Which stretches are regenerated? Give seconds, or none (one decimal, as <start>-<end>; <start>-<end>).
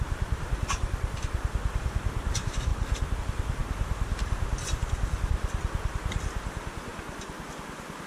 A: 0.0-2.7; 3.2-6.9; 7.5-8.1